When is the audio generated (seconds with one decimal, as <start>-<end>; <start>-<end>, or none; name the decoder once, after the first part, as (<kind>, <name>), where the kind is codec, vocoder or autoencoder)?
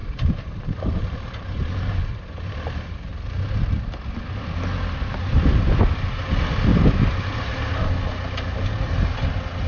0.0-2.0 (vocoder, BigVGAN v2); 6.7-7.8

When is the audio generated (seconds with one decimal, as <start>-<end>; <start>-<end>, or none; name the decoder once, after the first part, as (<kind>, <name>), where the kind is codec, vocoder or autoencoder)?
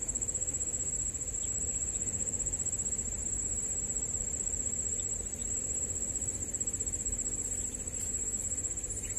5.4-8.4 (vocoder, BigVGAN v2)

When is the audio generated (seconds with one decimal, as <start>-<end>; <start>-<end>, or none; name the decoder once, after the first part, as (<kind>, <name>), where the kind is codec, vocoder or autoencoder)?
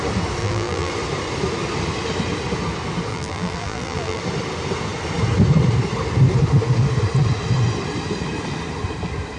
0.4-0.9 (vocoder, BigVGAN v2); 3.1-4.2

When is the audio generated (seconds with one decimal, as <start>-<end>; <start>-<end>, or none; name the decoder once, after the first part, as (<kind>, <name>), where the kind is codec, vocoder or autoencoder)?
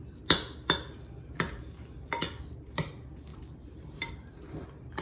2.4-5.0 (vocoder, BigVGAN v2)